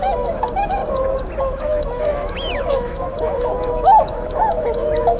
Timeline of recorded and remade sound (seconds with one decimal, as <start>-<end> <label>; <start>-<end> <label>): 0.0-0.8 remade; 0.8-1.4 recorded; 1.4-5.2 remade